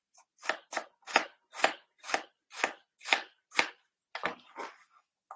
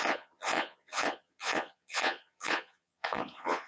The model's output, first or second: second